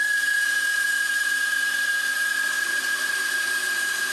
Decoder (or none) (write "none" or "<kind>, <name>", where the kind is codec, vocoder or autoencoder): none